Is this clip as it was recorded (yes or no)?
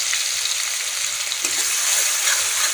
no